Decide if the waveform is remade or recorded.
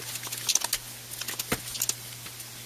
recorded